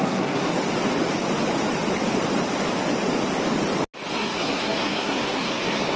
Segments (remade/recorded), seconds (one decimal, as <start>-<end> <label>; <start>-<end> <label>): 0.0-0.5 remade; 0.5-4.1 recorded; 4.1-6.0 remade